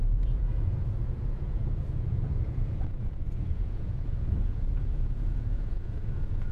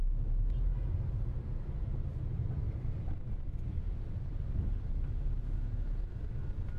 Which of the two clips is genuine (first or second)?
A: second